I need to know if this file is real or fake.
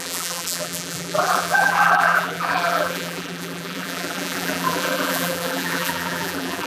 fake